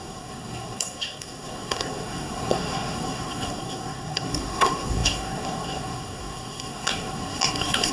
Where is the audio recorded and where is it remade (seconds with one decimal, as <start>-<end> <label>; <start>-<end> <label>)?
0.0-7.9 remade